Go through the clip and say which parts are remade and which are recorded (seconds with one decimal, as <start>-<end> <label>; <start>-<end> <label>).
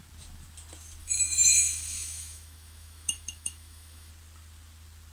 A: 0.0-1.0 recorded; 1.0-4.1 remade; 4.1-5.1 recorded